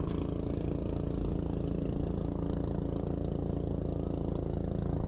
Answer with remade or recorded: recorded